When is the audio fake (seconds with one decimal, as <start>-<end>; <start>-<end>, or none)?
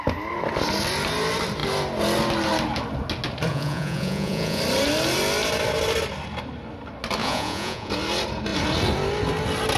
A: 3.5-4.6; 7.2-7.9